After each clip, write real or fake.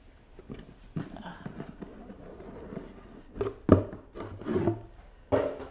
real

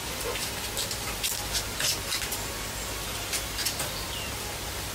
real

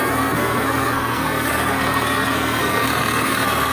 fake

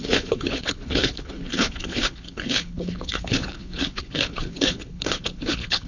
fake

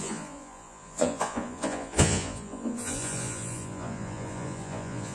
fake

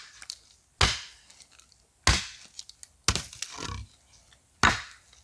real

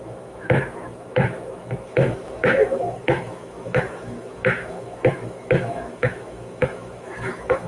fake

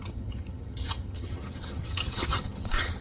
fake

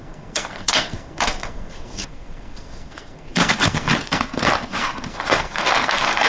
fake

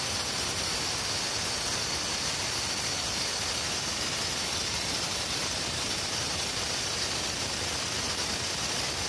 real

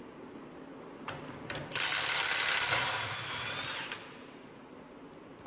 real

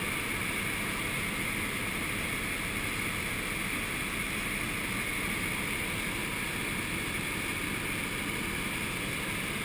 real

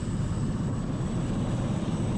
real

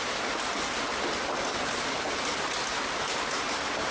real